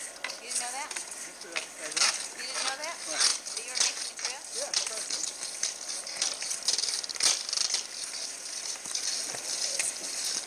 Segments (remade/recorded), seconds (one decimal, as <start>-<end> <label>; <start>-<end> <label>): 0.0-10.5 recorded